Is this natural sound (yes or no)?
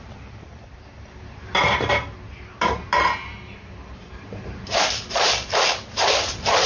no